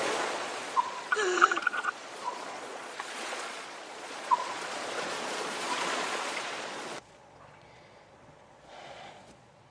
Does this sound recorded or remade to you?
remade